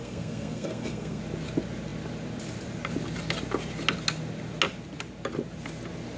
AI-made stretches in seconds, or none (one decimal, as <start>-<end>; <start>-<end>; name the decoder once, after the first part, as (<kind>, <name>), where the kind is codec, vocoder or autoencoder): 0.0-1.2 (codec, SNAC)